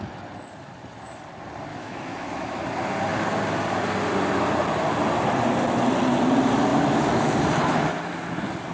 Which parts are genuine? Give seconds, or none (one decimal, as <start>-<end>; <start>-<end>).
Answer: 0.0-1.7; 2.6-8.7